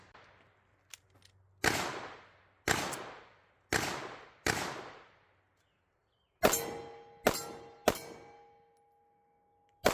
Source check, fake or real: real